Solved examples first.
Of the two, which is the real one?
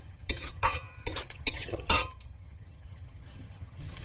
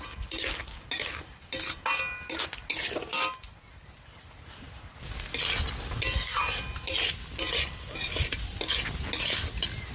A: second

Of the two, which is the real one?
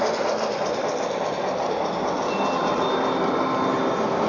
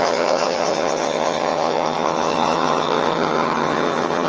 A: first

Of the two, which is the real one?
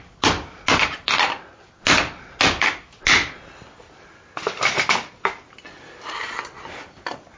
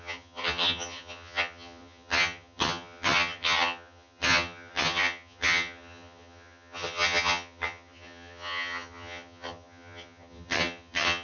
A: first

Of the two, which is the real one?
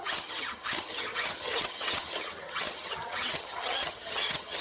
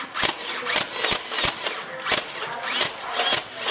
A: second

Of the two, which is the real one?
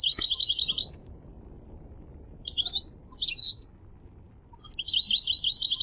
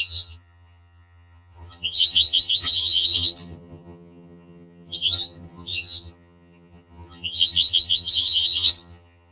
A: first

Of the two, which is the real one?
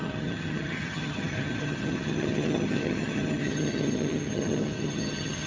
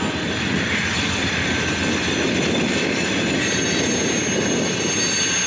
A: second